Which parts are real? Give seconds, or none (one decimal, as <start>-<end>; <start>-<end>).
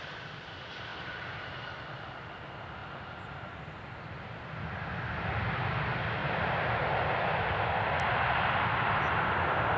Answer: 0.0-0.9; 1.4-6.2; 6.8-9.8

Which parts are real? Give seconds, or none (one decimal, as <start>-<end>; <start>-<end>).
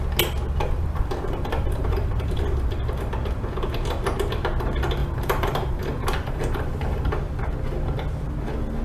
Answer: 0.0-0.6; 3.1-5.0; 7.1-8.8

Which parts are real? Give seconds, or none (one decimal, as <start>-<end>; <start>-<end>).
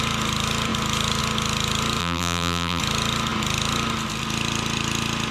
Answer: 0.0-2.0; 2.8-5.3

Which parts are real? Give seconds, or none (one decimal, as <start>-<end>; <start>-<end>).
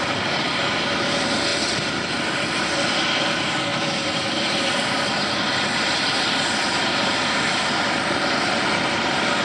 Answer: 0.0-3.7; 8.1-9.4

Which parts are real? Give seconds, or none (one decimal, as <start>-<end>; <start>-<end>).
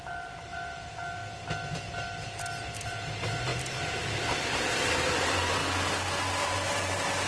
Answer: 1.2-2.9; 3.5-4.1; 5.6-6.2